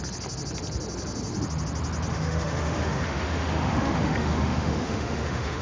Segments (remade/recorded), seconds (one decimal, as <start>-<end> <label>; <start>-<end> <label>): 0.0-2.1 recorded; 2.1-5.6 remade